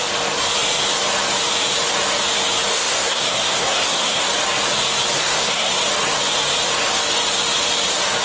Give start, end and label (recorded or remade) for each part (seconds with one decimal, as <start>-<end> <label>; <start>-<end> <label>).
0.0-2.7 recorded; 2.7-4.3 remade; 4.3-5.2 recorded; 5.2-5.7 remade; 5.7-8.2 recorded